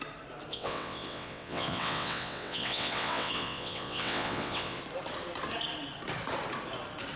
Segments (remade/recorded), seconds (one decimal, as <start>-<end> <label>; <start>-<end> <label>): 0.0-0.5 recorded; 0.5-4.8 remade; 4.8-7.2 recorded